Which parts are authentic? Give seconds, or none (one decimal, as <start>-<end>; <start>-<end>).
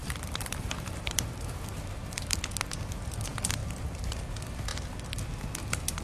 2.4-3.6; 4.2-6.0